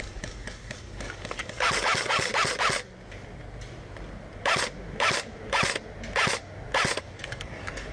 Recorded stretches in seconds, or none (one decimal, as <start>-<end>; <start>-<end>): 2.3-7.0